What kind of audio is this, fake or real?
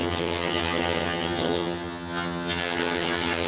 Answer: fake